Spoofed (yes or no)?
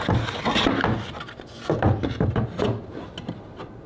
no